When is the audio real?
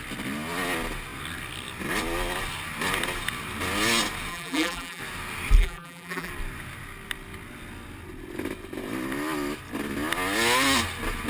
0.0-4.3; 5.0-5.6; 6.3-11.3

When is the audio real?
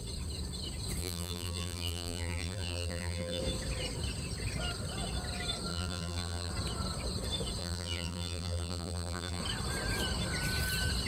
0.0-1.0; 3.4-5.7; 6.5-7.6; 9.4-11.1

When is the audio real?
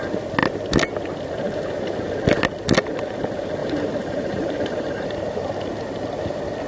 0.0-3.6; 5.7-6.7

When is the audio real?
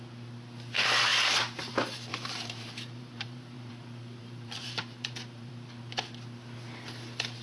0.0-2.1; 3.7-4.2; 5.5-7.4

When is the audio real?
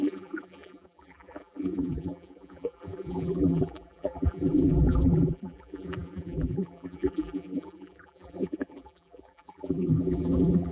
none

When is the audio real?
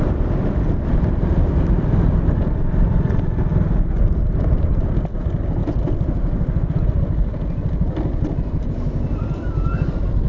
3.5-4.1; 5.6-8.7